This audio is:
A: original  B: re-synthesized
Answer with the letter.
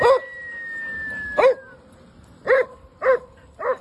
A